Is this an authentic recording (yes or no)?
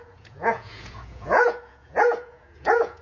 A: no